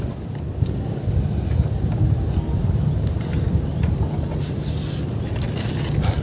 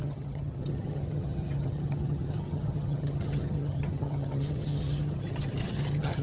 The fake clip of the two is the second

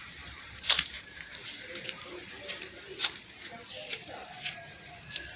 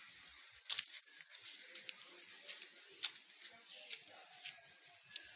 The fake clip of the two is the first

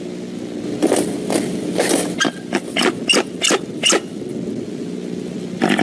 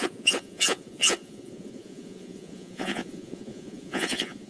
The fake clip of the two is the second